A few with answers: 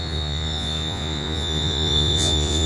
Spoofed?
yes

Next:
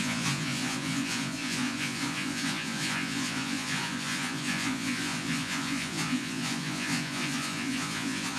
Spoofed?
yes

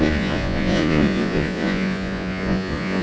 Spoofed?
yes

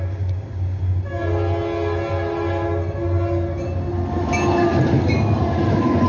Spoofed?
no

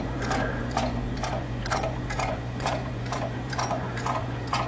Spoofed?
yes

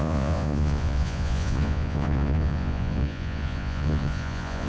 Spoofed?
yes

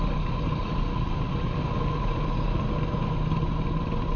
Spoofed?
no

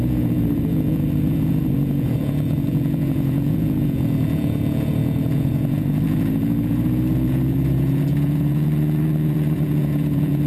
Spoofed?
yes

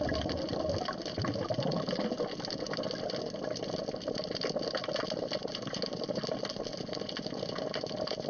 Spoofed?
no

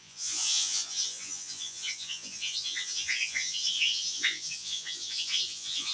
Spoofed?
yes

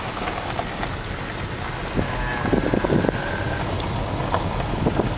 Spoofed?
no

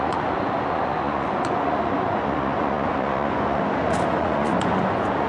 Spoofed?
yes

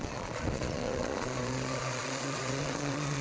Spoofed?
yes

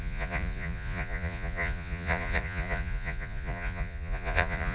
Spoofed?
yes